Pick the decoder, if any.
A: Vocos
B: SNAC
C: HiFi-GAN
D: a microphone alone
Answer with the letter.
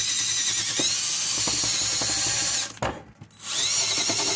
D